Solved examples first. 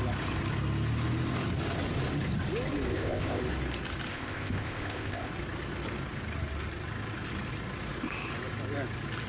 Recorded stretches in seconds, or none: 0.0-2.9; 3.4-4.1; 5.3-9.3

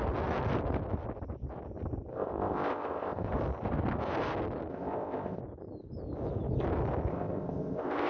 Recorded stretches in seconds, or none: 0.0-2.1; 3.3-4.7; 5.4-7.1

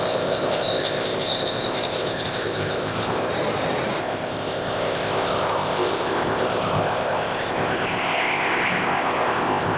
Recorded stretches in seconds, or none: 3.3-4.0

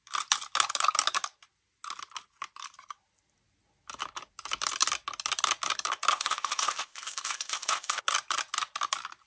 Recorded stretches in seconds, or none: 0.0-6.1; 8.0-9.3

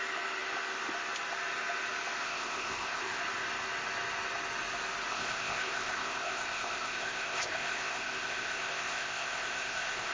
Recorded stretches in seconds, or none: 0.0-2.2; 3.2-5.1

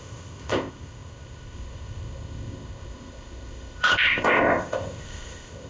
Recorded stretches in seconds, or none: none